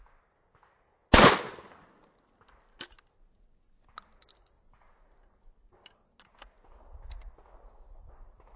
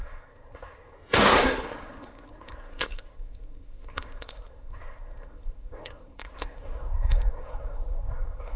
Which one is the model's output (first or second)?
second